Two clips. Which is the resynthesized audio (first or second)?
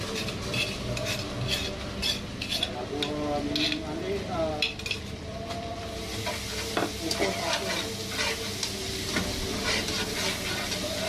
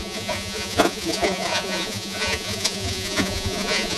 second